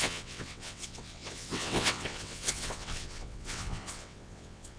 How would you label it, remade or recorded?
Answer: remade